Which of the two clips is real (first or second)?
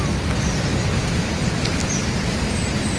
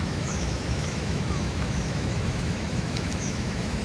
first